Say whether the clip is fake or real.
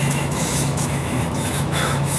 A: fake